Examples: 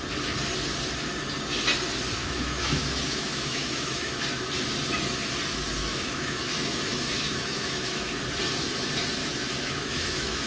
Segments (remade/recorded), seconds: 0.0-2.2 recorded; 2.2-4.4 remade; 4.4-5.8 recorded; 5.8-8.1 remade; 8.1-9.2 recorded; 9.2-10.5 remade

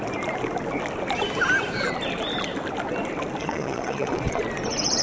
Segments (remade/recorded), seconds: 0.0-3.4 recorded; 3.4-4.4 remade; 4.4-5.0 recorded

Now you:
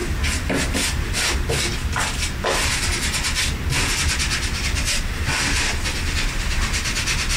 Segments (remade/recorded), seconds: 0.0-7.4 recorded